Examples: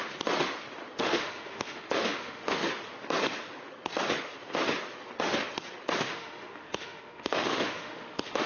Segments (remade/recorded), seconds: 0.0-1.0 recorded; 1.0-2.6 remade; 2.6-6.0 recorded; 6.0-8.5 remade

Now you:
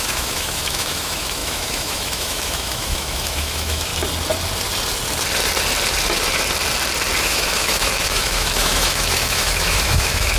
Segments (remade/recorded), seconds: 0.0-3.9 remade; 3.9-7.2 recorded; 7.2-10.4 remade